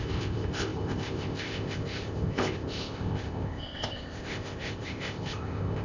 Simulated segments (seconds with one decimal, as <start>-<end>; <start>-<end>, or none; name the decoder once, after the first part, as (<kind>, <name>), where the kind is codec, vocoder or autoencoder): 0.0-5.8 (codec, ZipCodec)